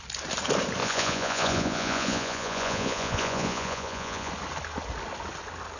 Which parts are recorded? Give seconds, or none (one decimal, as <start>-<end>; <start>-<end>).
0.0-0.8; 4.3-5.8